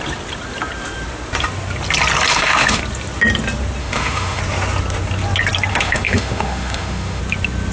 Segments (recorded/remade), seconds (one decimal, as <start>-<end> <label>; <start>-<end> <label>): 0.0-2.3 recorded; 2.3-2.8 remade; 2.8-3.8 recorded; 3.8-4.4 remade; 4.4-5.7 recorded; 5.7-7.2 remade; 7.2-7.7 recorded